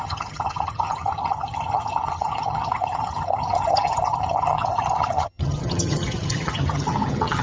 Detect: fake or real fake